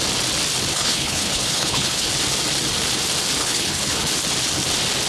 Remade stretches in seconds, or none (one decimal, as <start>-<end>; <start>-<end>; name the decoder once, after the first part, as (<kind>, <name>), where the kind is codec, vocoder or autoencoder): 0.7-2.1 (codec, HILCodec); 3.4-4.0